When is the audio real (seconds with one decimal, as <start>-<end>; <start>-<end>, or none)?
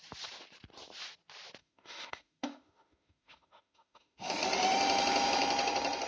0.0-1.6; 4.3-6.1